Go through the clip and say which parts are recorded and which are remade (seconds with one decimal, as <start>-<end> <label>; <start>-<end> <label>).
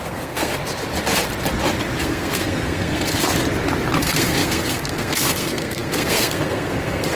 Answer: 0.0-0.5 remade; 0.5-2.0 recorded; 2.0-3.3 remade; 3.3-4.0 recorded; 4.0-7.1 remade